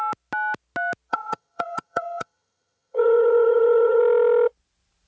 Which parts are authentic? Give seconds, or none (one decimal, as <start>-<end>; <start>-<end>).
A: 0.0-1.1; 4.0-5.1